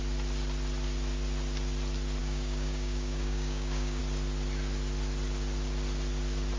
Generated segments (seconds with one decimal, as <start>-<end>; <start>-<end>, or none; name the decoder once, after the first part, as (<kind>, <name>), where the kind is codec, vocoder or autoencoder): 2.2-4.0 (codec, DAC)